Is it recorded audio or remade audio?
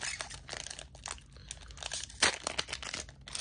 recorded